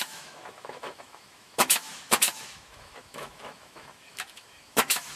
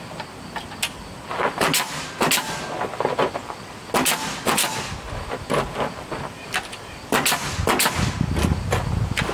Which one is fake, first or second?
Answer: first